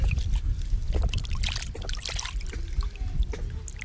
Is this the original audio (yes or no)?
yes